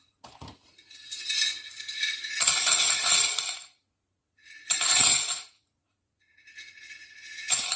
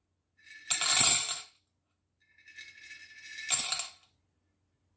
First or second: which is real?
second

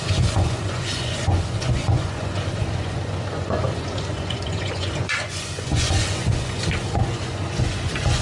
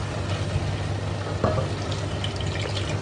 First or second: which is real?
second